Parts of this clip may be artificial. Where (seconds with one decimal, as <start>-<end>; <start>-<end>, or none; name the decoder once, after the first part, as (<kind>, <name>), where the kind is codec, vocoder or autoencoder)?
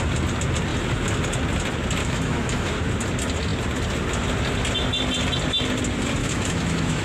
2.0-2.7 (autoencoder, DAC-VAE); 6.2-7.0